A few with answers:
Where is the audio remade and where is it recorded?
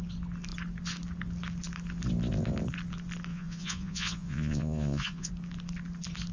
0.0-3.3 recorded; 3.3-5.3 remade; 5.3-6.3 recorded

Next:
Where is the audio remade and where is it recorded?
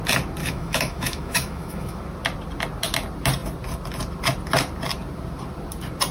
0.0-0.4 recorded; 0.4-2.0 remade; 2.0-6.1 recorded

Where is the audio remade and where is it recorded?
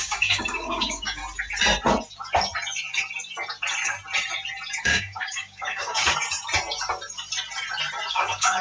0.0-1.2 remade; 1.2-4.8 recorded; 4.8-6.0 remade; 6.0-8.1 recorded; 8.1-8.6 remade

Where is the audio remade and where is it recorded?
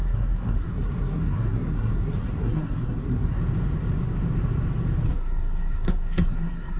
0.0-3.4 remade; 3.4-5.1 recorded; 5.1-6.8 remade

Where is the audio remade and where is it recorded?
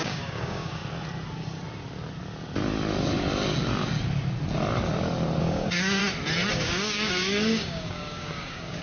0.0-0.8 remade; 0.8-5.4 recorded; 5.4-6.0 remade; 6.0-6.5 recorded; 6.5-8.8 remade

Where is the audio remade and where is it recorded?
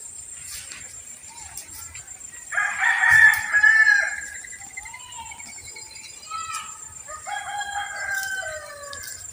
0.0-9.3 recorded